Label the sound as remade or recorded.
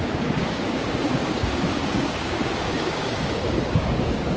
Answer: remade